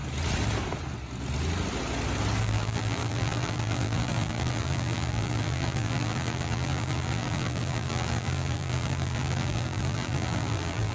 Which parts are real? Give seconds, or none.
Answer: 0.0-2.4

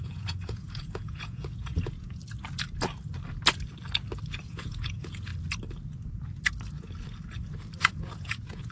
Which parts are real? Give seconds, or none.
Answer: 2.2-4.3; 5.3-7.8